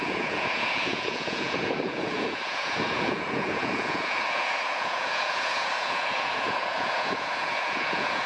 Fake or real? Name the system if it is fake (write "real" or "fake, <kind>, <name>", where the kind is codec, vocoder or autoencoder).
fake, vocoder, Vocos